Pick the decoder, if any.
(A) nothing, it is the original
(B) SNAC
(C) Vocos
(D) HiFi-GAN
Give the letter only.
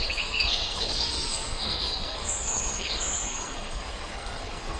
B